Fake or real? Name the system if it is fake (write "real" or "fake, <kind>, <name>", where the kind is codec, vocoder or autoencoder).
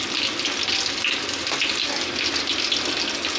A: real